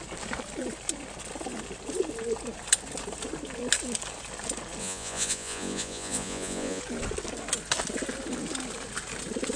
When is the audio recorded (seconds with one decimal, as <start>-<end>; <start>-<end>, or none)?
0.0-4.8; 6.8-9.6